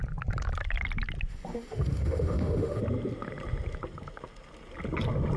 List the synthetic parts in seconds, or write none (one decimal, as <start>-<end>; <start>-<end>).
1.3-2.8